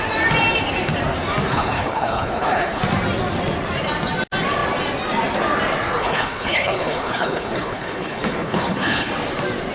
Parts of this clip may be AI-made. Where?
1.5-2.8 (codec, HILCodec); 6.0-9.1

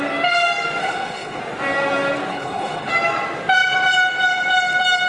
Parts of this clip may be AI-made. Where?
0.8-1.4 (codec, HILCodec); 2.3-2.9